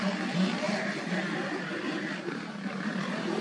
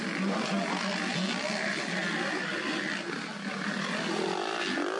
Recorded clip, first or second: second